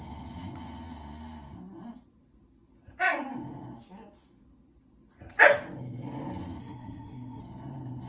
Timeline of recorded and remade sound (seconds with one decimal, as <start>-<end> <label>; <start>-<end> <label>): 0.0-6.6 recorded; 6.6-7.4 remade; 7.4-8.1 recorded